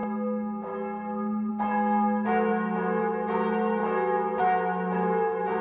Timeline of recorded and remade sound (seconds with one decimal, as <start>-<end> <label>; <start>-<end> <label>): 0.0-5.6 recorded